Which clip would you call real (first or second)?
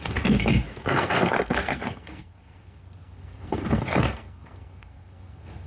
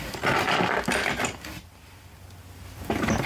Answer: second